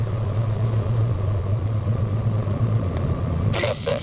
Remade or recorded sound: remade